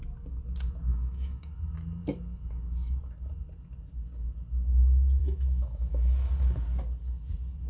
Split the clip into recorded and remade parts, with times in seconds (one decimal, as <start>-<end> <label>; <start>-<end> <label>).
0.0-0.9 recorded; 0.9-1.6 remade; 1.6-5.2 recorded; 5.2-6.3 remade; 6.3-7.7 recorded